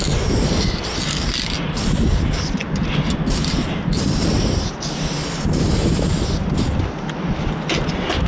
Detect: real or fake real